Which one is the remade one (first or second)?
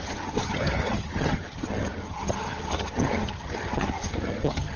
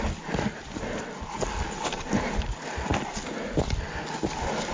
first